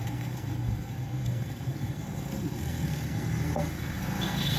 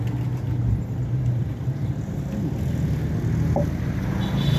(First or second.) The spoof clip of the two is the first